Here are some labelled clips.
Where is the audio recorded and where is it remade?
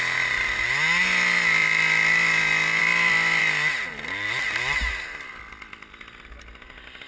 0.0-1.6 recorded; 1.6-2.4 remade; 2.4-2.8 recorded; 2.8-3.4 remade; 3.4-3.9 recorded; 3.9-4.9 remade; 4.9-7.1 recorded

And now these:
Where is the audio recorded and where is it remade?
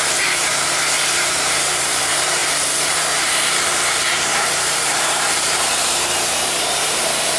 0.0-7.4 remade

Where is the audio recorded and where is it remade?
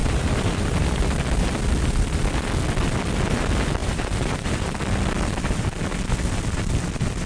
0.0-1.0 remade; 1.0-3.8 recorded; 3.8-4.8 remade; 4.8-7.3 recorded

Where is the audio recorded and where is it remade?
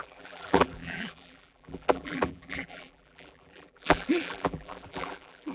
0.0-5.5 remade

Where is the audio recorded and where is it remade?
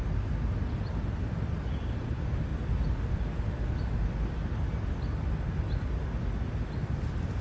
0.0-2.5 remade; 2.5-6.9 recorded; 6.9-7.4 remade